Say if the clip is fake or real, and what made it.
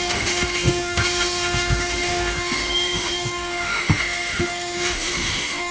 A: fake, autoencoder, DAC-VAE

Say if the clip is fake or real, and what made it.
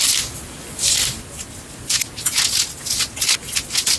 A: real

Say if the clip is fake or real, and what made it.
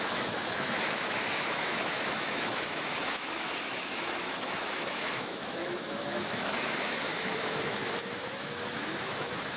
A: fake, autoencoder, DAC-VAE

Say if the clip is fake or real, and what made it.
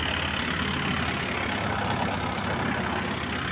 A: real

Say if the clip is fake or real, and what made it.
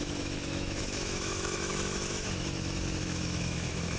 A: fake, autoencoder, DAC-VAE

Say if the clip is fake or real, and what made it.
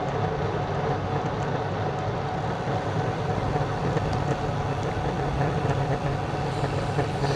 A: real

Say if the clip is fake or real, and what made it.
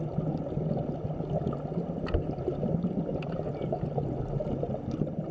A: real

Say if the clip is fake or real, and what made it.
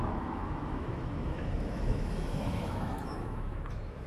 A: fake, autoencoder, DAC-VAE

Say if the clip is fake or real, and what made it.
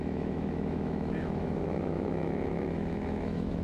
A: fake, autoencoder, DAC-VAE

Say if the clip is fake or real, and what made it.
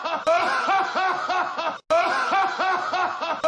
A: real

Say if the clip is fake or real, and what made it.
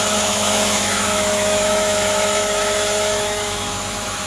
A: fake, autoencoder, DAC-VAE